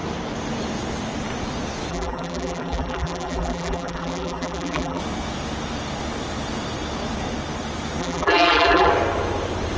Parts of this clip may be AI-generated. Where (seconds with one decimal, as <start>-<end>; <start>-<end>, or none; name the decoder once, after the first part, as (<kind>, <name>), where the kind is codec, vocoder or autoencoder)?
1.9-5.0 (vocoder, BigVGAN v2); 8.0-8.9